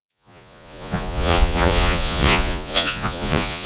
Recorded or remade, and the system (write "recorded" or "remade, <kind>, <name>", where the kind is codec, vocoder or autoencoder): remade, vocoder, Vocos